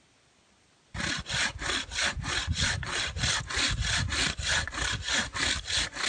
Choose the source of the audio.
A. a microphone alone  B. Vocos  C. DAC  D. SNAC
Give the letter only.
A